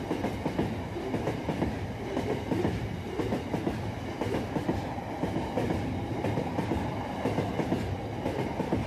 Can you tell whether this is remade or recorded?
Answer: recorded